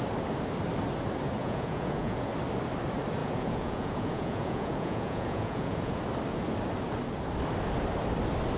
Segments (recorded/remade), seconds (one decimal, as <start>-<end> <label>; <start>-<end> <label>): 0.0-1.4 recorded; 1.4-2.3 remade; 2.3-3.2 recorded; 3.2-6.0 remade; 6.0-8.6 recorded